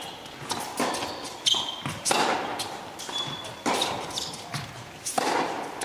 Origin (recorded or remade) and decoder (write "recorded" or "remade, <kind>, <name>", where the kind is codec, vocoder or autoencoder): recorded